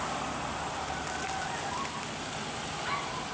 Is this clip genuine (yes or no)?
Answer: yes